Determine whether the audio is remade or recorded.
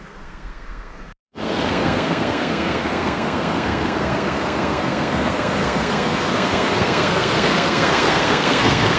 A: remade